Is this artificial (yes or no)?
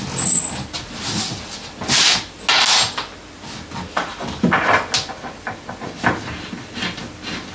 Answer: no